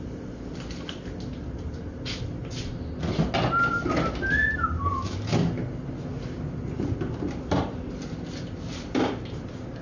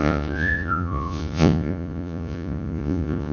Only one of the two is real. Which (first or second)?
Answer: first